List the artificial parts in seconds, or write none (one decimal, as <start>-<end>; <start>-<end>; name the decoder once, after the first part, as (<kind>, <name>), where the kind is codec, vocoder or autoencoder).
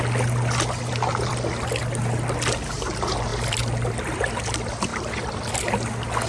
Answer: 3.3-4.3 (vocoder, BigVGAN v2); 4.9-5.5